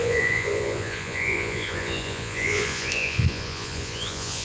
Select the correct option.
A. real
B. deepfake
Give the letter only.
B